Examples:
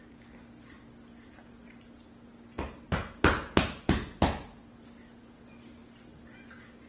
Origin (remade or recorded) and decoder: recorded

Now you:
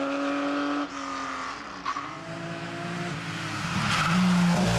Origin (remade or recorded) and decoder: recorded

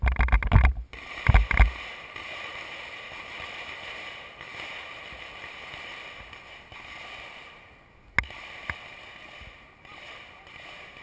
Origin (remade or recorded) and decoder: recorded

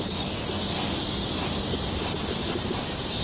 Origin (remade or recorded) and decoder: recorded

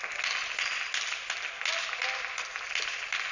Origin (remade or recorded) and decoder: recorded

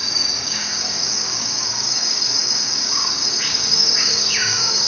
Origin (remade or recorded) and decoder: remade, codec, DAC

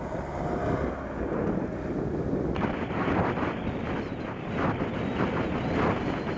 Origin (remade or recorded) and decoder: recorded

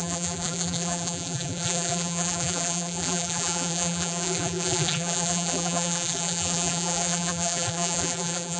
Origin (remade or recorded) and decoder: remade, vocoder, BigVGAN v2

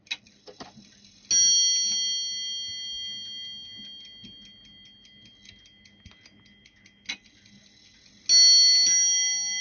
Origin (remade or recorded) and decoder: recorded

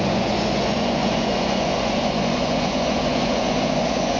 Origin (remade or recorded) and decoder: remade, vocoder, Vocos